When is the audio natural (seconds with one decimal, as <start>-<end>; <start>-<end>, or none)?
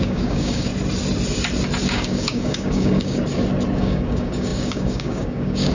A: 0.7-1.9; 3.2-3.8